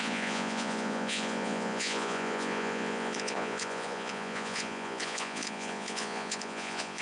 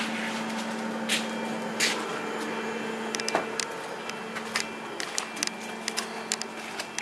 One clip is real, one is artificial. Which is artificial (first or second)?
first